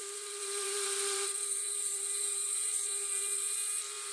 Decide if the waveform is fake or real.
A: fake